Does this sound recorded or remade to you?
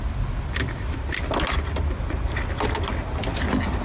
recorded